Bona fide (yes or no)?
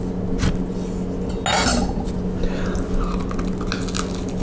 yes